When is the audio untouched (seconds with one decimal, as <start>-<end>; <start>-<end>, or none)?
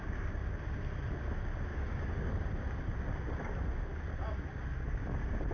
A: 0.0-1.7; 2.3-5.5